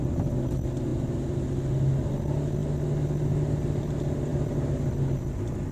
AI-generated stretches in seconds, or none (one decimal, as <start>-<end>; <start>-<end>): none